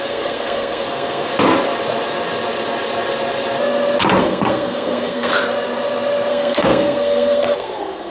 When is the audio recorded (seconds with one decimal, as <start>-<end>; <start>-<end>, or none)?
1.3-4.2; 5.3-6.3

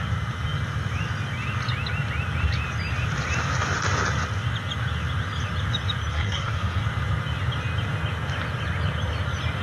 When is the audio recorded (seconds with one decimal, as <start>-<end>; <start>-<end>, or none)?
0.0-6.1; 6.8-9.6